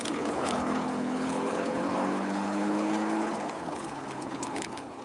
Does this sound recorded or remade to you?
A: remade